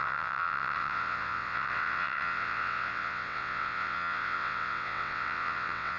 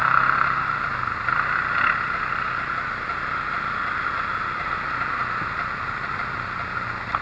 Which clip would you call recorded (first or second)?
second